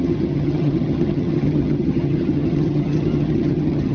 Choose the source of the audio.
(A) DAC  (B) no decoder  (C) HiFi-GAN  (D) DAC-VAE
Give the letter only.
C